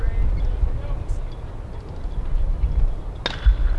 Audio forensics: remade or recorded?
recorded